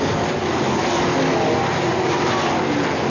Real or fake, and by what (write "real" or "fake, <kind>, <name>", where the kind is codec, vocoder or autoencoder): real